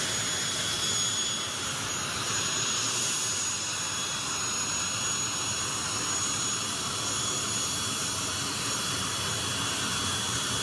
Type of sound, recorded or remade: recorded